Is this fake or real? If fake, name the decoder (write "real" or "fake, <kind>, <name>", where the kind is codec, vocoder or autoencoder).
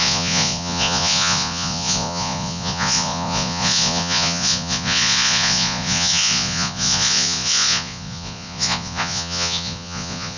fake, vocoder, Vocos